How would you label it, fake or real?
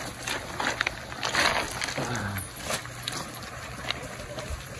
real